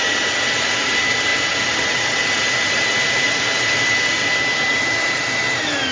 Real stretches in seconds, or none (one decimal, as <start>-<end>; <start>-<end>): 0.0-5.9